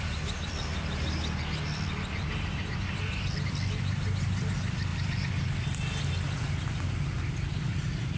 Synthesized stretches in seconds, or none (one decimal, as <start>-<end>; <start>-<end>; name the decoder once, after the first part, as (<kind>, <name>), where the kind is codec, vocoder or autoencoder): none